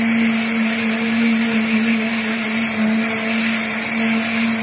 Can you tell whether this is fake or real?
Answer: real